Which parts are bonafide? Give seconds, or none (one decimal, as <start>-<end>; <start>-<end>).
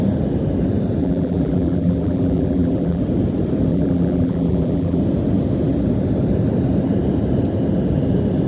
0.0-1.0; 3.0-3.7; 5.0-8.5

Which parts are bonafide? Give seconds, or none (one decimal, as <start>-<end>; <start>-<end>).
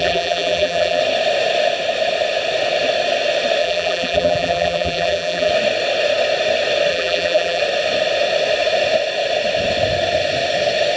1.0-3.6; 5.5-6.9; 7.6-11.0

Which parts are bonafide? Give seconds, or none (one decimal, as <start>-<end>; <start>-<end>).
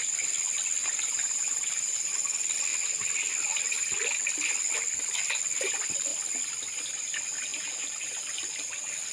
0.0-0.8; 2.1-7.5; 8.2-9.1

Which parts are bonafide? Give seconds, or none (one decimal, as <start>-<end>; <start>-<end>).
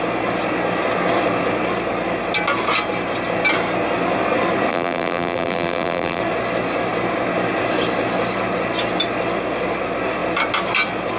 0.0-4.7; 6.2-11.2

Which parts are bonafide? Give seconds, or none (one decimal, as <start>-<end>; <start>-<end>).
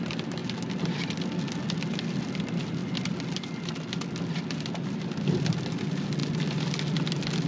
0.0-7.5